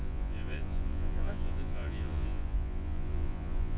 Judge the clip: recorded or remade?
remade